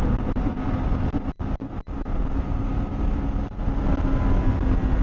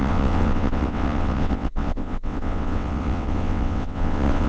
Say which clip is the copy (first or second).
second